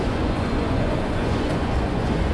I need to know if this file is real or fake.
fake